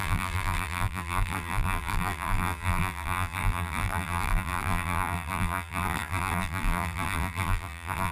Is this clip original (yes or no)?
no